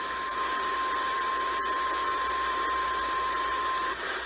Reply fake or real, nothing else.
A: fake